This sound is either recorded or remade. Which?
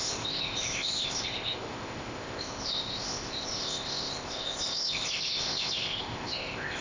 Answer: remade